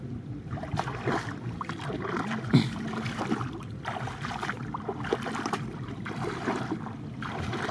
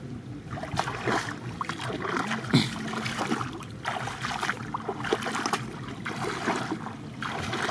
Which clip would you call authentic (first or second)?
second